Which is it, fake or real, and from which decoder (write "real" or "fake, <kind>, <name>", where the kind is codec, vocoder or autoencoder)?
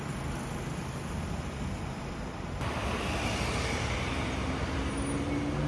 real